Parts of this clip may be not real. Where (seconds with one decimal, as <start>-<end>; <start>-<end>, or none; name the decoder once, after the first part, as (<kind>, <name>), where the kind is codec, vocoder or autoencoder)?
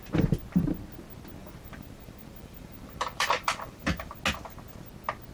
1.4-4.2 (vocoder, BigVGAN v2)